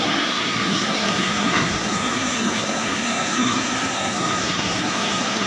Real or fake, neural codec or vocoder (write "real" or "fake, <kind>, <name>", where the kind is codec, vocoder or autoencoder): fake, codec, SNAC